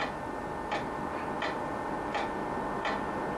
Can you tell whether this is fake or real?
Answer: real